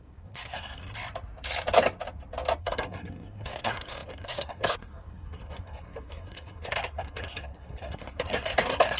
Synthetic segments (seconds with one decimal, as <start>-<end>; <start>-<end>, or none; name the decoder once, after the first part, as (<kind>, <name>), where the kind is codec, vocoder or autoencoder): 0.0-0.8 (codec, SNAC); 2.6-9.0